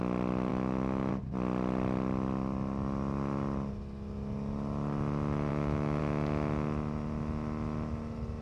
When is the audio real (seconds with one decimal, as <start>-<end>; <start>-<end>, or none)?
0.0-0.5; 1.1-5.5; 6.0-8.4